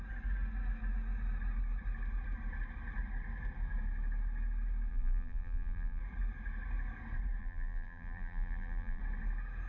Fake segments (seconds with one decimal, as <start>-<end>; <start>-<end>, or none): 4.9-6.0; 7.4-9.0